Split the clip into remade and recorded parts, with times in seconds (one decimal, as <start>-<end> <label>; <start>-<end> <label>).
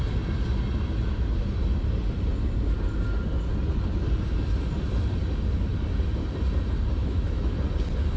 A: 0.0-7.0 recorded; 7.0-7.5 remade; 7.5-8.2 recorded